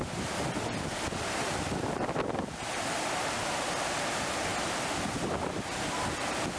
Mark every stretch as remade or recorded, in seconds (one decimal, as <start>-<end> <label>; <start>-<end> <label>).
0.0-6.6 recorded